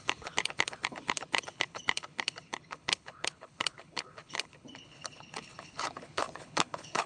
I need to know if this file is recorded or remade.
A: remade